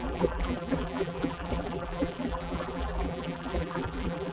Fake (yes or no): yes